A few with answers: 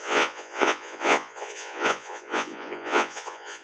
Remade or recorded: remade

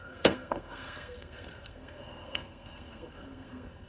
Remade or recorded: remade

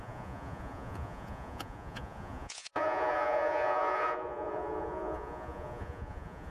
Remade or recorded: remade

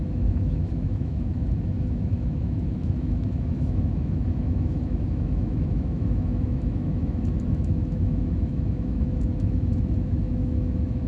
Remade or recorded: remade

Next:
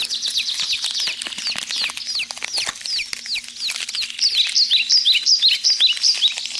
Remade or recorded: recorded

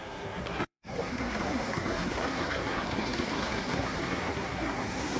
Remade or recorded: remade